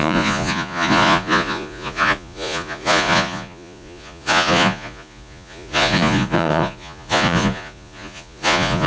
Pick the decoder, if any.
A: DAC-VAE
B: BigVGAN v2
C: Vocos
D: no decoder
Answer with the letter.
C